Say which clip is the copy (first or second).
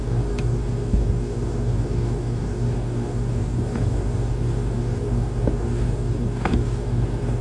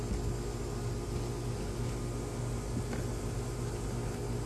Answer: first